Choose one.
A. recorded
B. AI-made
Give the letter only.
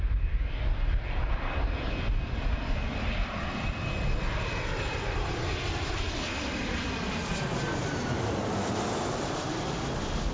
A